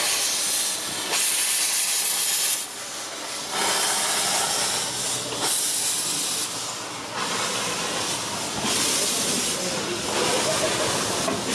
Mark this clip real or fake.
real